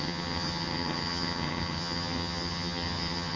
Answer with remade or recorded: remade